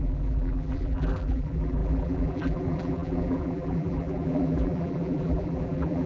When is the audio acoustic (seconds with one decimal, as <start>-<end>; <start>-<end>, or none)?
none